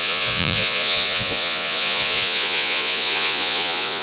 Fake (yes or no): yes